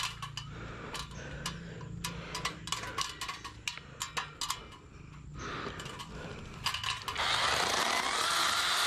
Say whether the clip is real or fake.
real